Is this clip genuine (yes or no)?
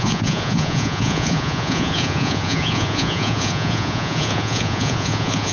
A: no